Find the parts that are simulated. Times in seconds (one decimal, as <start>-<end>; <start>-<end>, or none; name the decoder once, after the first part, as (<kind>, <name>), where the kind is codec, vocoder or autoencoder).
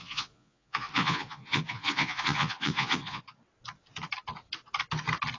0.0-3.2 (vocoder, Vocos)